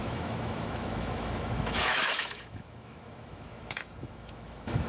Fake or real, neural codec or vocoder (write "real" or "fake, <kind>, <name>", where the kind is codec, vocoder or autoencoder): fake, autoencoder, DAC-VAE